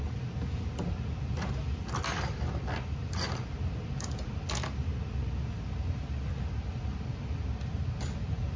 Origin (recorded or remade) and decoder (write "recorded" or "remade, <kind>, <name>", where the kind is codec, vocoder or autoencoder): recorded